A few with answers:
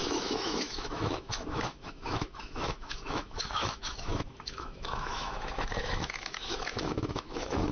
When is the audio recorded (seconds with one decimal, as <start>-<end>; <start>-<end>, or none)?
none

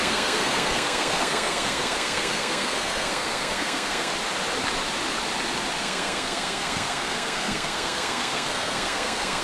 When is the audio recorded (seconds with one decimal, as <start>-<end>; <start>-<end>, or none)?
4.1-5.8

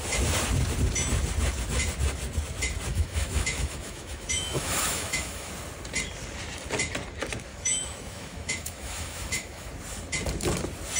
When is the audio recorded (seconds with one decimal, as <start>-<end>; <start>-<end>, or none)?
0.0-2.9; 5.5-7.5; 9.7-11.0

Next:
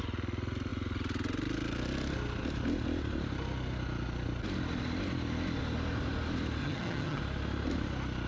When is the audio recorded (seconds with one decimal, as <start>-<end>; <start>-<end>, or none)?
0.0-6.6; 7.2-8.3